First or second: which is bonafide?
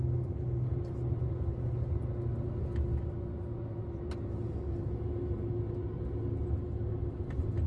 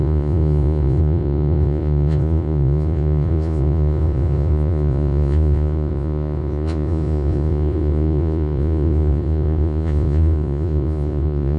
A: first